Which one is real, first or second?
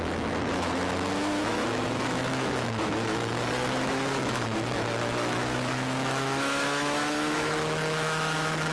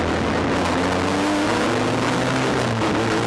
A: second